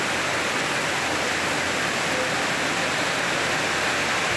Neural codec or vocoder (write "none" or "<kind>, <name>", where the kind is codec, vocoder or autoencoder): vocoder, BigVGAN v2